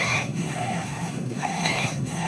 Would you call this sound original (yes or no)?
no